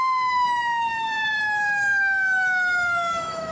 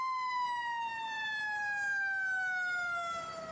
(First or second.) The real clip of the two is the second